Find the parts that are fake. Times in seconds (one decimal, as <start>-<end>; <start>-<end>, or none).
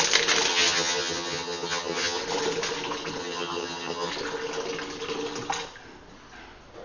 0.5-2.2; 3.2-4.1